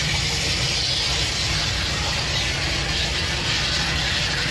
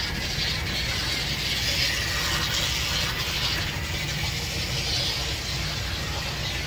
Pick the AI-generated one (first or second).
first